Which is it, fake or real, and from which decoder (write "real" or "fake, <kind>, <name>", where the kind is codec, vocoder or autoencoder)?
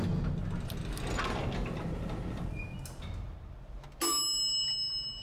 real